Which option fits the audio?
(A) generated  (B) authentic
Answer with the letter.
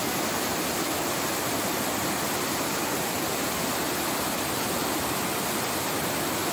B